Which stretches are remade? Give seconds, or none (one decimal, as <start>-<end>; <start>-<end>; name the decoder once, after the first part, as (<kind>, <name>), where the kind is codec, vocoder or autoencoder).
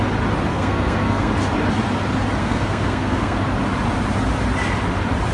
0.5-1.3 (codec, SNAC); 2.4-3.4